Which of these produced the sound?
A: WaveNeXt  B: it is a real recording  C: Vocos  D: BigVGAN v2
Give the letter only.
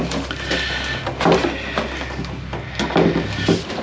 B